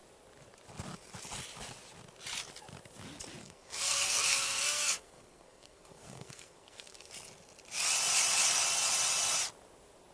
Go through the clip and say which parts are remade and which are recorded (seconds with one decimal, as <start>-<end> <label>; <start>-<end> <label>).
0.0-3.4 recorded; 3.4-7.1 remade; 7.1-10.1 recorded